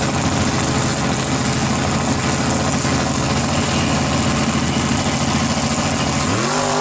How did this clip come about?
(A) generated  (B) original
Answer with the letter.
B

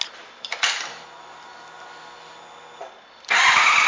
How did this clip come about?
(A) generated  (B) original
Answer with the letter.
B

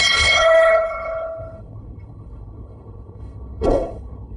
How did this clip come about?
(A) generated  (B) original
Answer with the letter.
A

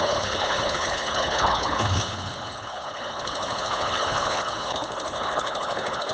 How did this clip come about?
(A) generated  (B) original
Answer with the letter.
A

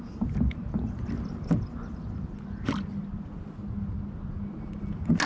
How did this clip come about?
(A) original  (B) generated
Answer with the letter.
A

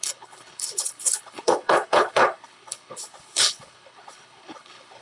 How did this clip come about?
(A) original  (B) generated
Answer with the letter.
B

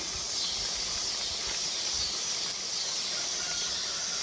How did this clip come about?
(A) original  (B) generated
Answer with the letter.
A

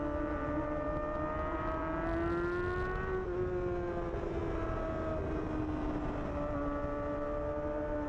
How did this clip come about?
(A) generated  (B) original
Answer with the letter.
B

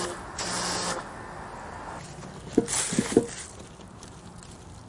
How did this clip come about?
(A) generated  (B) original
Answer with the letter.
B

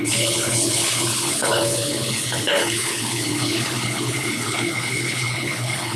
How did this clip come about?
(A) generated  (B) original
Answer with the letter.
A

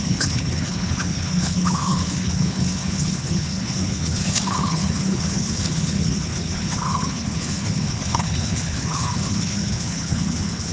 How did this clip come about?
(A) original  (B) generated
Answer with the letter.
B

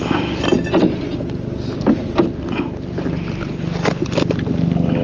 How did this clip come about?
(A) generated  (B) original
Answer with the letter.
B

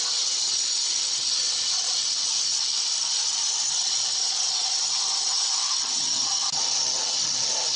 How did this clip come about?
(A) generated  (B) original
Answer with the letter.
B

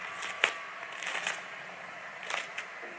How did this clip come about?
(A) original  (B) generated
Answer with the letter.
A